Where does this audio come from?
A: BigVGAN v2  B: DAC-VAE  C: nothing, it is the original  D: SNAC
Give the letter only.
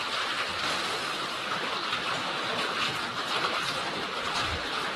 C